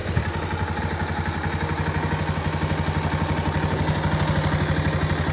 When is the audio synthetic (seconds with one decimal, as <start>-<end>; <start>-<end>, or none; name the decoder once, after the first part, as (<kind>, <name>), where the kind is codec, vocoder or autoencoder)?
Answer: none